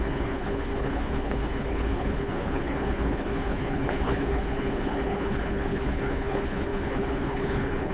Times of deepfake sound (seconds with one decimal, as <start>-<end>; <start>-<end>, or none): 0.0-7.9